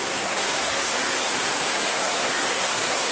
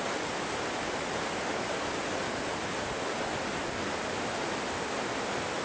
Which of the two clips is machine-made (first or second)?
first